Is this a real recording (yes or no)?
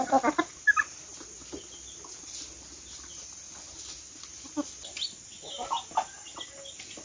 yes